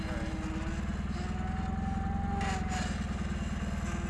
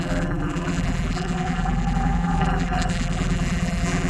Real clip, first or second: first